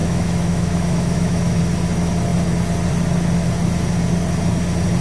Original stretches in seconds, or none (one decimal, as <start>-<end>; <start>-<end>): 1.6-5.0